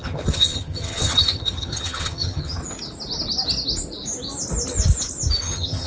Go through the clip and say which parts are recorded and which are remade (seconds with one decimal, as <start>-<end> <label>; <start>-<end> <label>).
0.0-2.6 remade; 2.6-5.4 recorded; 5.4-5.9 remade